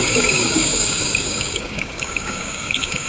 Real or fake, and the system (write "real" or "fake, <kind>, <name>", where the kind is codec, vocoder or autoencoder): fake, codec, DAC